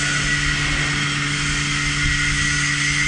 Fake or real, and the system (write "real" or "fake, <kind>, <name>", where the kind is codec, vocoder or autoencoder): real